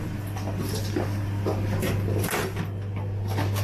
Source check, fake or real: real